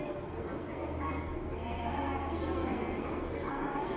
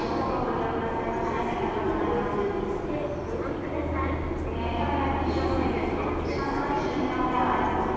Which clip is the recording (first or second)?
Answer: second